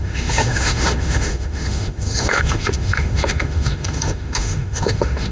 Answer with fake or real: fake